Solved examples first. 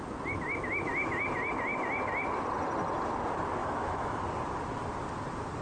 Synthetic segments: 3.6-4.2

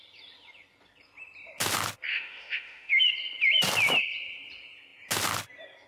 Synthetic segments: 2.1-3.0

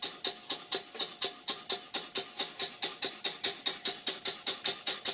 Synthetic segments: none

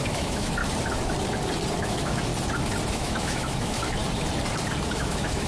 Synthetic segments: 0.0-0.6; 1.8-2.3; 2.9-4.0; 4.9-5.5

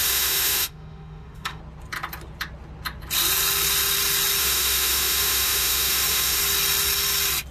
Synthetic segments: 0.0-1.6; 4.4-6.4

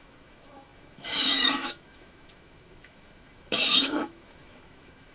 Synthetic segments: 0.0-5.1

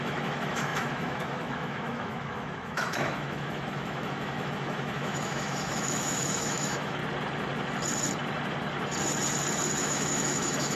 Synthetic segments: 0.0-7.0; 9.8-10.8